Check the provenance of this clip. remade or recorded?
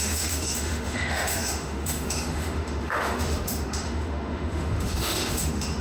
remade